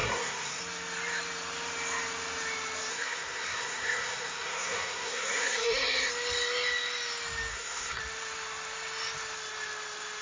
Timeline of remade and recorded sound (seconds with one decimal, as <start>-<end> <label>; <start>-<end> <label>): 0.0-0.6 remade; 0.6-2.9 recorded; 2.9-6.1 remade; 6.1-7.5 recorded; 7.5-8.0 remade; 8.0-10.2 recorded